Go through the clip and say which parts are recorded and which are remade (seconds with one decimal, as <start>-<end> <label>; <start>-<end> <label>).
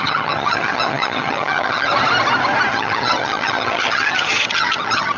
0.0-1.9 remade; 1.9-2.7 recorded; 2.7-5.2 remade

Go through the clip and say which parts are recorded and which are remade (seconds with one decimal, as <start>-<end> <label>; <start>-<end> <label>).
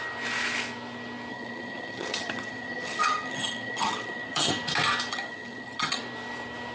0.0-1.3 recorded; 1.3-4.5 remade; 4.5-5.1 recorded; 5.1-6.0 remade; 6.0-6.7 recorded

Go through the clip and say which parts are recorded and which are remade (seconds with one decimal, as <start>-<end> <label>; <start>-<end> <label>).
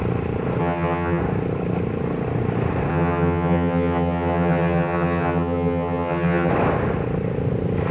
0.0-0.6 recorded; 0.6-1.2 remade; 1.2-2.9 recorded; 2.9-6.5 remade; 6.5-7.9 recorded